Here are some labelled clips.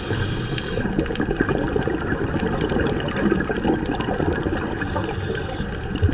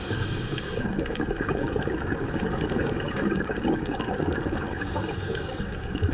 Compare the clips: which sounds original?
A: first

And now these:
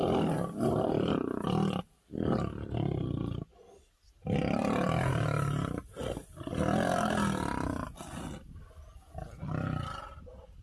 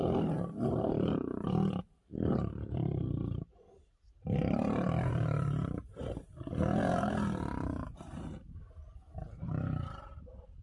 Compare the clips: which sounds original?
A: first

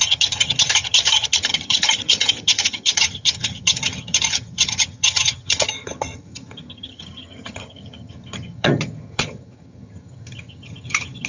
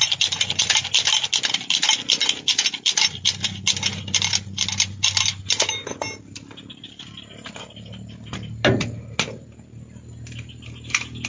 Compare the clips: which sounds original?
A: second